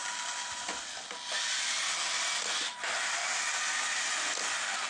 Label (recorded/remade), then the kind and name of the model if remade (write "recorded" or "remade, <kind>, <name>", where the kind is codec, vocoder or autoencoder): recorded